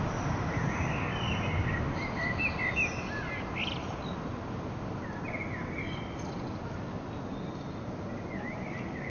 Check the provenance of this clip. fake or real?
real